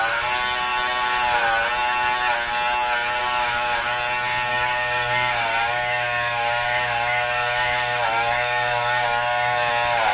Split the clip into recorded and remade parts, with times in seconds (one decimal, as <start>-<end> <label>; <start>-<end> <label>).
0.0-3.2 recorded; 3.2-3.8 remade; 3.8-4.5 recorded; 4.5-9.7 remade; 9.7-10.1 recorded